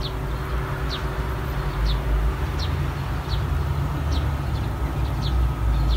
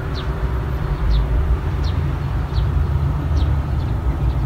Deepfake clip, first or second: second